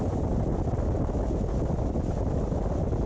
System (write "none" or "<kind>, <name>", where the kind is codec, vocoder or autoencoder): none